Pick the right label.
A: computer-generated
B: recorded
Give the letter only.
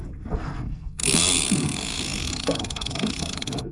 A